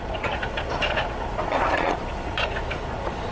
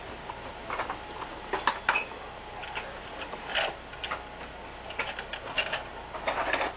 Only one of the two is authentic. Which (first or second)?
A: second